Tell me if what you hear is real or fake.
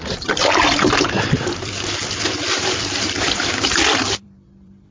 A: fake